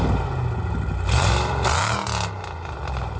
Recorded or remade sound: recorded